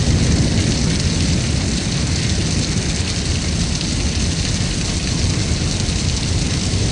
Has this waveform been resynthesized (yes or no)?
no